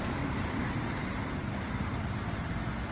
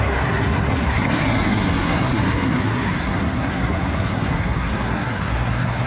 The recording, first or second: first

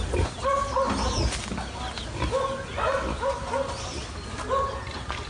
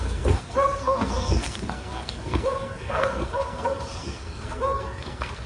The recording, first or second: first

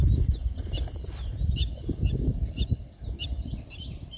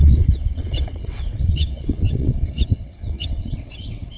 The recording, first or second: first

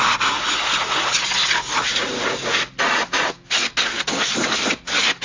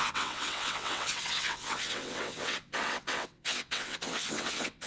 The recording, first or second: first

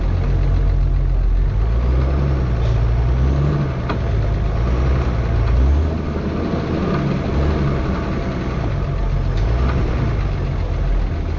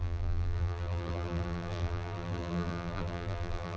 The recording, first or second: first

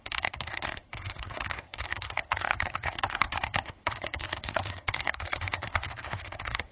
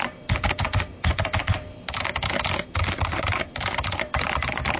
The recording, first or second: second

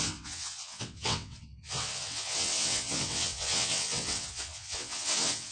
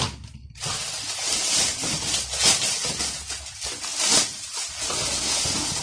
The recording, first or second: second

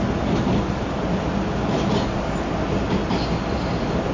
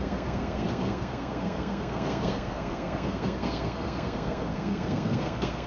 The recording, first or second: first